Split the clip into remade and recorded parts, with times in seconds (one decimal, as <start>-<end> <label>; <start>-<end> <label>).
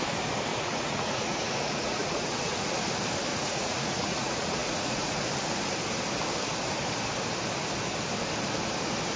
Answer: 0.0-0.5 recorded; 0.5-2.7 remade; 2.7-3.3 recorded; 3.3-5.2 remade; 5.2-9.2 recorded